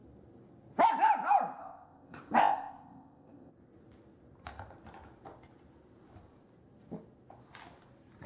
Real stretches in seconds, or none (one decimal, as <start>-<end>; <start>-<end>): 0.0-1.6; 3.5-8.3